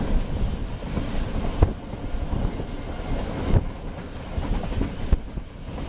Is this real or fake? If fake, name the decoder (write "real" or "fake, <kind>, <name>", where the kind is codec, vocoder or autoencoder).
real